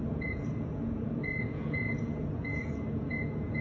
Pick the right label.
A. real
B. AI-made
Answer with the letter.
B